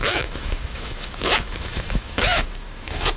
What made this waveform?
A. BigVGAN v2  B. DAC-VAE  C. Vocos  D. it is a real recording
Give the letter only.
B